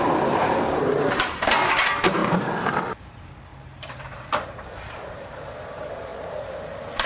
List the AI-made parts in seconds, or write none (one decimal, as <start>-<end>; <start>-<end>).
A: 0.0-6.1